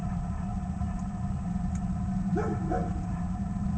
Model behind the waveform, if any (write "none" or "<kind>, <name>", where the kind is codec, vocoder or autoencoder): none